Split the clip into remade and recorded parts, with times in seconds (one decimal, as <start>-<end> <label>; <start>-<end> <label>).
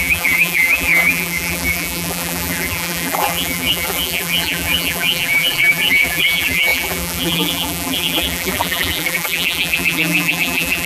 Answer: 0.0-10.9 remade